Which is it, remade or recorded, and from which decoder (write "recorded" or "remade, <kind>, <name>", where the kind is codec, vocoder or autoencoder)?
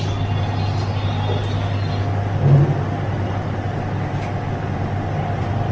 recorded